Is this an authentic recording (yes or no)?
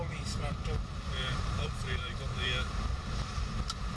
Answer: no